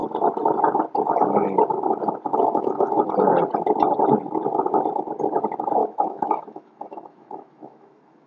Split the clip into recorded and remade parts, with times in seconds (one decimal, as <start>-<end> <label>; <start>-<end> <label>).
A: 0.0-2.3 recorded; 2.3-3.0 remade; 3.0-5.8 recorded; 5.8-8.3 remade